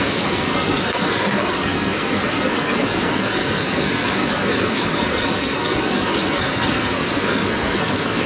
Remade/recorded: remade